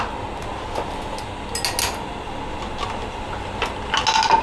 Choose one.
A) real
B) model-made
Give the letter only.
A